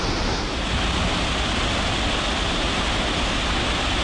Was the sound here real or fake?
real